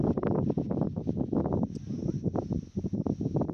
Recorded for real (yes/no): yes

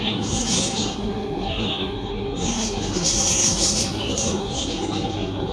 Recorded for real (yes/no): no